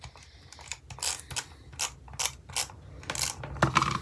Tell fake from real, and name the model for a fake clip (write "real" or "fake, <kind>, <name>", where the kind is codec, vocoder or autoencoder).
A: real